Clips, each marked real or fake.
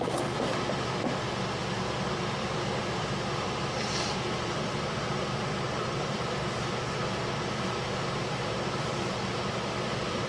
fake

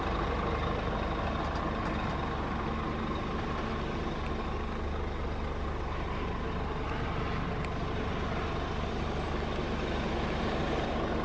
real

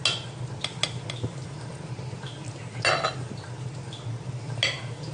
real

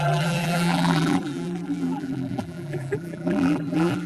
fake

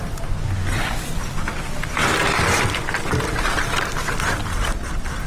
real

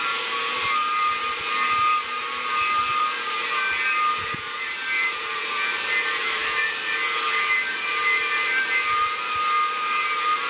fake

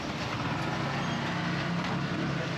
real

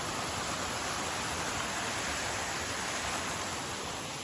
fake